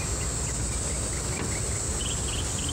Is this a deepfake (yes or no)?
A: no